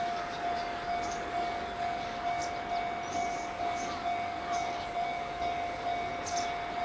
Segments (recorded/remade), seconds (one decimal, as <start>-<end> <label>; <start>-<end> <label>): 0.0-2.4 remade; 2.4-3.1 recorded; 3.1-6.1 remade; 6.1-6.8 recorded